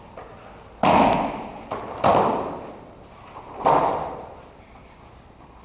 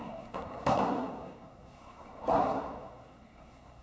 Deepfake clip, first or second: second